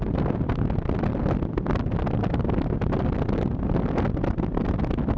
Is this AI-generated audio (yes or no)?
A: no